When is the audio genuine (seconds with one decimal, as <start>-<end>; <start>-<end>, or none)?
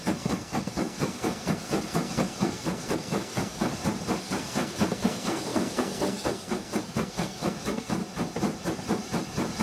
3.7-4.2; 8.0-9.6